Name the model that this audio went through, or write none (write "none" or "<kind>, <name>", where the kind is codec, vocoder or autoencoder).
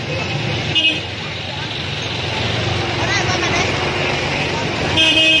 none